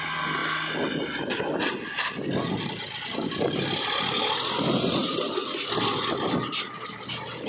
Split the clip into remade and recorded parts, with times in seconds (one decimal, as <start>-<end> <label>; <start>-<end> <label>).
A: 0.0-7.5 recorded